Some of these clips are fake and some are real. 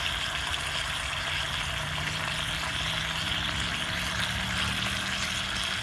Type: real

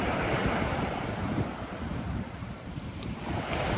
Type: fake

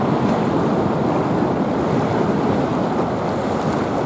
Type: real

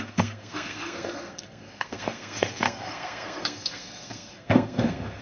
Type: fake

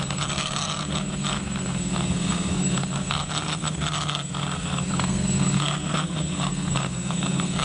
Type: fake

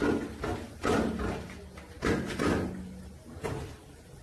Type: real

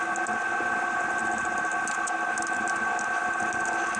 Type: real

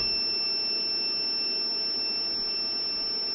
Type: real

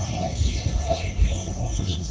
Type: fake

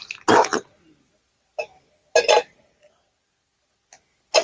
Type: real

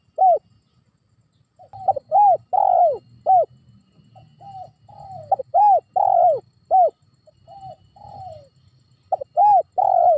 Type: real